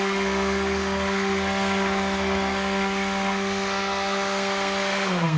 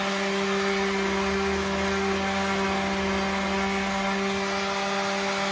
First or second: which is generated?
first